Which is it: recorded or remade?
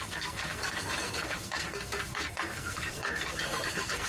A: remade